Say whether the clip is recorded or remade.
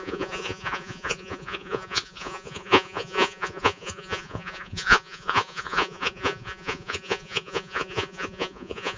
remade